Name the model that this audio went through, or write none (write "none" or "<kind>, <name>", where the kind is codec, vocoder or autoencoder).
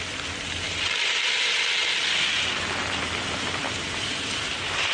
none